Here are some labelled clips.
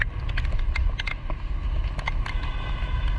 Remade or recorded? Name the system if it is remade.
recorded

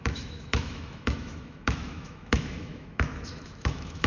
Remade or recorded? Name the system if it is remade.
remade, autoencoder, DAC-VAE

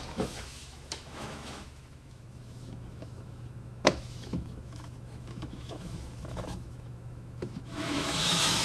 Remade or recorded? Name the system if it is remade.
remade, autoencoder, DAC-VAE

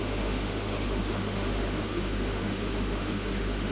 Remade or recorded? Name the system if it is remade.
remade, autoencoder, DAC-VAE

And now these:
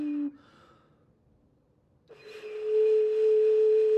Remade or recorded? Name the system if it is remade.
recorded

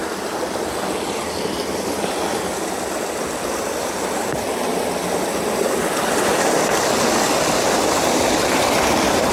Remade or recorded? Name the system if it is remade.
recorded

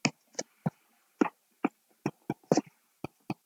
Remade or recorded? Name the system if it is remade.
recorded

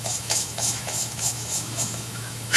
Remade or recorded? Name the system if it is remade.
remade, autoencoder, DAC-VAE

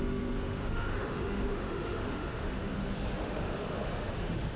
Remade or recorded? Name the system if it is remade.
remade, autoencoder, DAC-VAE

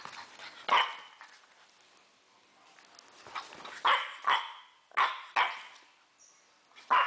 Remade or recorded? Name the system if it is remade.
recorded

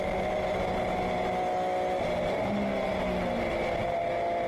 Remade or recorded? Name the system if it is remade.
recorded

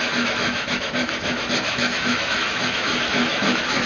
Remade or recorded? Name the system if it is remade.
remade, autoencoder, DAC-VAE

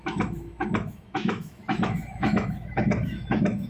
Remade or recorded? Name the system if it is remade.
remade, autoencoder, DAC-VAE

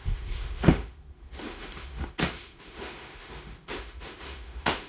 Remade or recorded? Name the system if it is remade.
remade, autoencoder, DAC-VAE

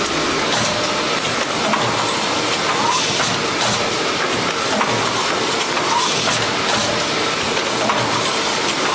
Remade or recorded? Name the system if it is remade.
recorded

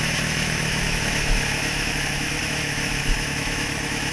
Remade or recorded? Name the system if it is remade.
remade, autoencoder, DAC-VAE